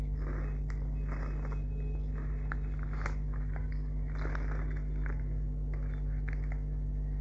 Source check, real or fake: real